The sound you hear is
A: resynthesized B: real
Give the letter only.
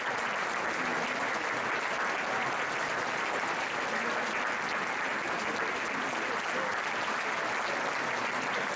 B